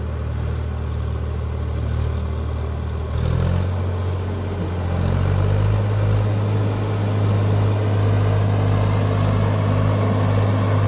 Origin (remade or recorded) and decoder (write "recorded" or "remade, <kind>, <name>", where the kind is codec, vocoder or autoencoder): recorded